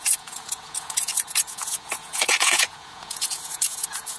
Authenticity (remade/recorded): remade